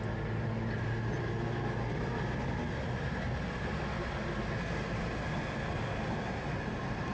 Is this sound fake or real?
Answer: real